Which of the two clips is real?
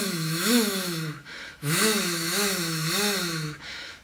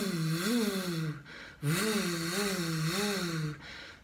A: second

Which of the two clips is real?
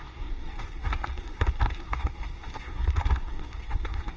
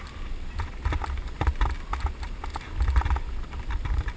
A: second